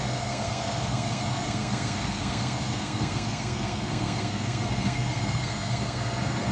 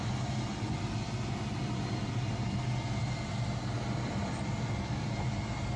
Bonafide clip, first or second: second